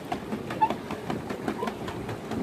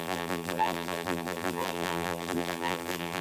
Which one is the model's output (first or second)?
second